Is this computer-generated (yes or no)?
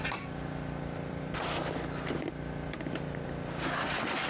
yes